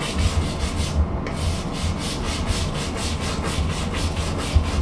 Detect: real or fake real